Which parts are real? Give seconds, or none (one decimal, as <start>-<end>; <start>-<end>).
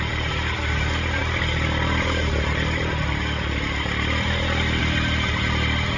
0.0-6.0